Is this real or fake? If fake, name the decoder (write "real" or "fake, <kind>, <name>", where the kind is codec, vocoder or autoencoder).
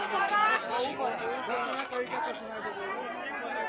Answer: real